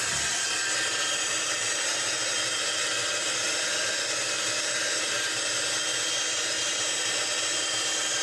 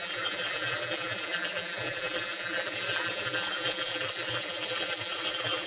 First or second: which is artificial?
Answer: second